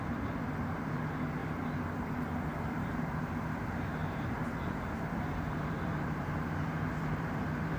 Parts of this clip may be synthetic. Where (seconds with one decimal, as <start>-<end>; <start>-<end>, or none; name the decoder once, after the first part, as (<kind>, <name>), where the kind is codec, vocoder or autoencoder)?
0.0-1.4 (vocoder, BigVGAN v2); 2.7-7.8